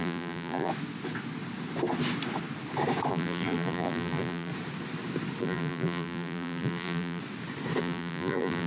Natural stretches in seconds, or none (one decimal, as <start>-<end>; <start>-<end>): 0.7-3.1; 4.5-5.4; 7.2-7.8